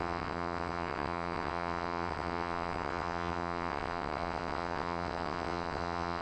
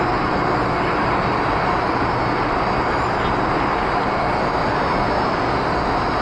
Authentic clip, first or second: second